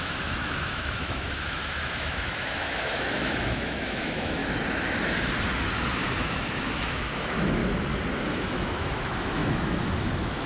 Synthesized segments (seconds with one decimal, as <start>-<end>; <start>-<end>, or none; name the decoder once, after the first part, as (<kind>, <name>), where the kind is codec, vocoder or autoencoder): 0.0-4.4 (autoencoder, DAC-VAE); 6.2-7.6; 8.3-10.5